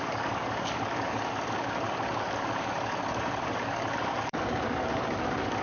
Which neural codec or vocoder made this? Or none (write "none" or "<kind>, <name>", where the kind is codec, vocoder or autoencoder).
codec, DAC